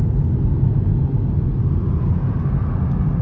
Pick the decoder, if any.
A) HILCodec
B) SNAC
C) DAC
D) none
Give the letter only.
D